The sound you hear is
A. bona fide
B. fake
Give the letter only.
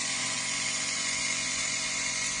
B